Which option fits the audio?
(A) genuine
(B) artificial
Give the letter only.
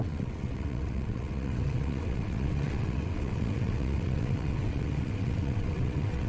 B